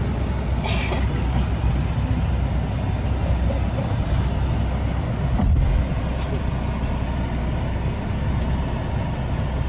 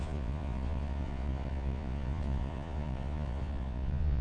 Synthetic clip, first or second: second